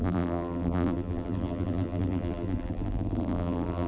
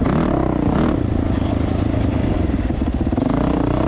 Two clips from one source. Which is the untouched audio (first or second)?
second